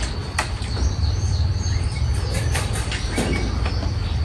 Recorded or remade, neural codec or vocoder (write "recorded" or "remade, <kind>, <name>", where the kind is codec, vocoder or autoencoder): remade, vocoder, BigVGAN v2